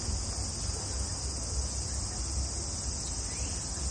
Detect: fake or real real